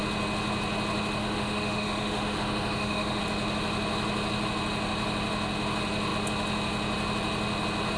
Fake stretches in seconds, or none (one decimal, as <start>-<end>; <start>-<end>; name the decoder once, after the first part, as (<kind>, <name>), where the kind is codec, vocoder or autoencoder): 1.2-3.2 (autoencoder, DAC-VAE)